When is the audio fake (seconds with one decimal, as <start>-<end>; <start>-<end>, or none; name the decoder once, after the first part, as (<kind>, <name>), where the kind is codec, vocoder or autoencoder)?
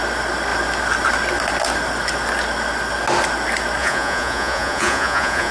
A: 3.8-5.5 (vocoder, Vocos)